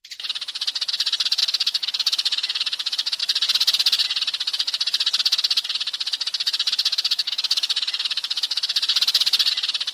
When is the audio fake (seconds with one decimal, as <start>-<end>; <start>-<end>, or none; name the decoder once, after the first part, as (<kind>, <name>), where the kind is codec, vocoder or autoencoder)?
1.4-3.2 (autoencoder, DAC-VAE); 6.9-8.6